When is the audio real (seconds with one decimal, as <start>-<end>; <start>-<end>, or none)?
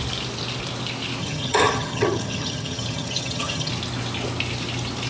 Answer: 0.0-1.2; 3.7-5.1